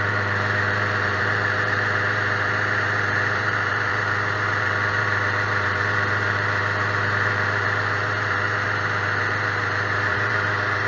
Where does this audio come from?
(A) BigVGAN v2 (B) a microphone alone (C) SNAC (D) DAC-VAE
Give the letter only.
A